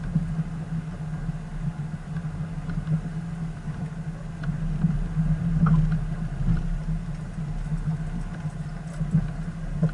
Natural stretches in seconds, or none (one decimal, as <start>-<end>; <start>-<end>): 0.0-9.9